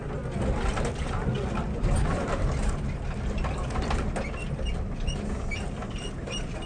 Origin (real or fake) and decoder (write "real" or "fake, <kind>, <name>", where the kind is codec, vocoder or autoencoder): real